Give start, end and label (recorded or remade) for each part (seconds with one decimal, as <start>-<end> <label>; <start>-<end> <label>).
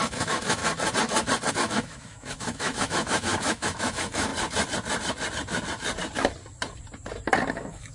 0.0-0.6 remade; 0.6-1.5 recorded; 1.5-4.3 remade; 4.3-7.5 recorded; 7.5-7.9 remade